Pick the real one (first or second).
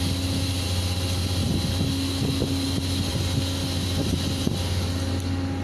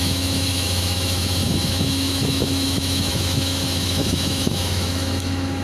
first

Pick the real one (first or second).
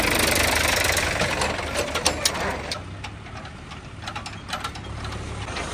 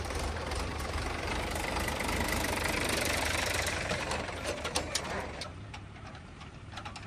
first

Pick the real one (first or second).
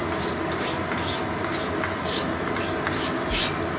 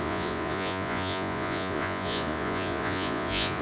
first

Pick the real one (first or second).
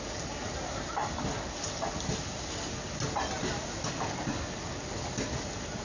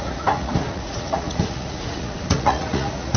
first